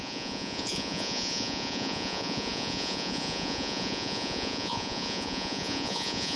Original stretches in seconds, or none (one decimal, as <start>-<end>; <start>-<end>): none